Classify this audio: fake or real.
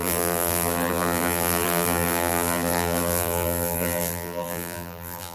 fake